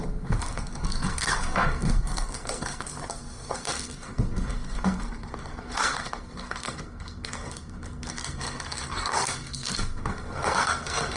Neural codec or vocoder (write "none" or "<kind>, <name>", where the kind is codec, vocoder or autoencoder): codec, SNAC